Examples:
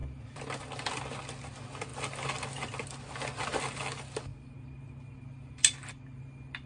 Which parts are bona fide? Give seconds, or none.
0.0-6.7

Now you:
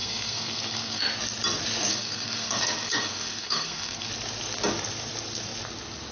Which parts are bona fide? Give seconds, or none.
1.0-1.9; 4.1-6.1

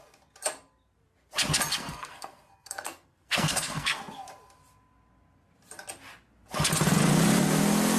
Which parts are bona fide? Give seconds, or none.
0.0-1.7; 4.0-8.0

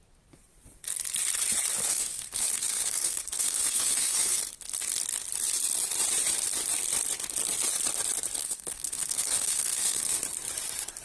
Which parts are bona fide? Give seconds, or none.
0.0-1.9; 4.4-8.4; 10.2-11.0

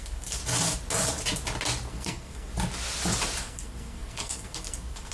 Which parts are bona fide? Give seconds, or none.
0.4-1.9; 2.5-3.4

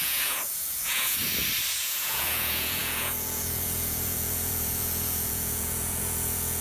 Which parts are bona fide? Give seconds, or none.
1.2-1.8